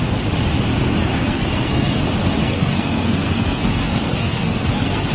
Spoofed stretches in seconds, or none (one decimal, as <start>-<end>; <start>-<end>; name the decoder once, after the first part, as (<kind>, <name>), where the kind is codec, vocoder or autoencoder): 1.1-2.0 (codec, SNAC); 2.4-5.1